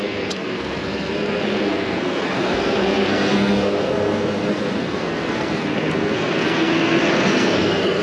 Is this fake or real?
fake